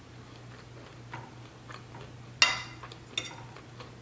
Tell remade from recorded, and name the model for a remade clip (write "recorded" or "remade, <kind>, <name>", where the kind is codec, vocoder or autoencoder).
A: recorded